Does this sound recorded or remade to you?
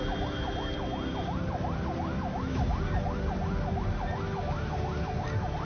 recorded